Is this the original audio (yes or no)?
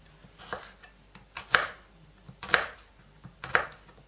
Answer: yes